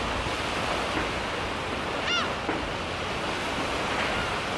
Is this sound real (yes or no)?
yes